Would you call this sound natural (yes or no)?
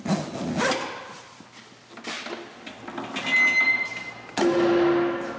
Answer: yes